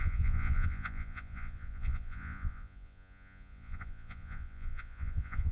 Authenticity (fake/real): fake